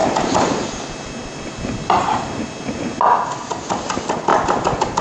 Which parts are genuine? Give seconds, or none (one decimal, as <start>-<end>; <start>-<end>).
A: 3.0-4.3